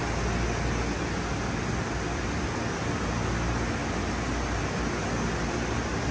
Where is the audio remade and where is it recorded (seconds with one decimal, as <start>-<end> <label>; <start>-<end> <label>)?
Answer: 0.0-6.1 recorded